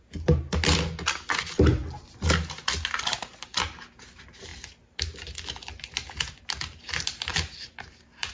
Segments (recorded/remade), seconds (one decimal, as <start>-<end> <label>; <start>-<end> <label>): 0.0-7.3 recorded; 7.3-8.3 remade